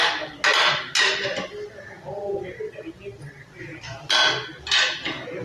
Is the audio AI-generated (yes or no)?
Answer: no